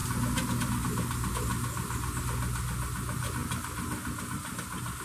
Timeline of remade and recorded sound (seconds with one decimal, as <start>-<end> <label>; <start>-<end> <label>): 0.0-5.0 recorded